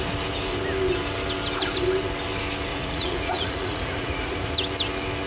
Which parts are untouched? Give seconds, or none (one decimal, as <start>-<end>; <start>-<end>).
0.0-2.7; 4.5-5.3